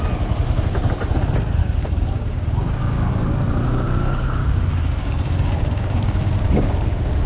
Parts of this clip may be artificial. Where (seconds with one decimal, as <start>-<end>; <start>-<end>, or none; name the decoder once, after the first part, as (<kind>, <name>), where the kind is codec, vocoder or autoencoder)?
1.6-3.1 (codec, DAC); 4.0-7.3